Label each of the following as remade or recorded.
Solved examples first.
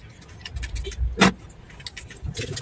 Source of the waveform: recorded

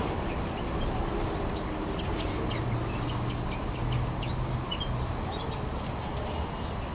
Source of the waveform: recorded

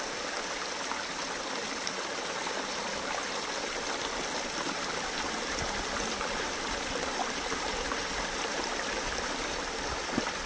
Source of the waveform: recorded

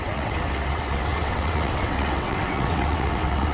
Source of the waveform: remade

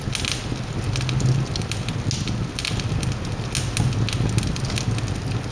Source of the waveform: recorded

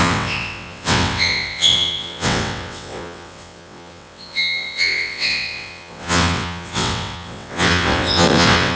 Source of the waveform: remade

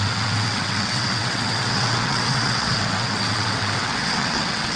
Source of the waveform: remade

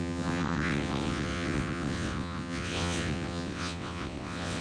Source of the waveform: remade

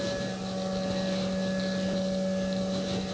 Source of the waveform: recorded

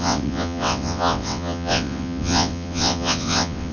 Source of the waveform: remade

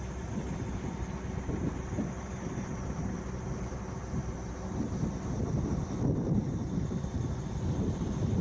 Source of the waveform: recorded